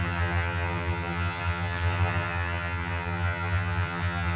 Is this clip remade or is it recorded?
remade